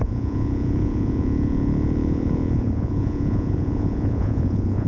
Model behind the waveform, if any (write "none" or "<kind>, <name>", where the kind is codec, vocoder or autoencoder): vocoder, Vocos